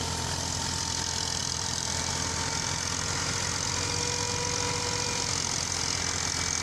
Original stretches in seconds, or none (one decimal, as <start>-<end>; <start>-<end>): 0.0-1.4; 2.1-6.6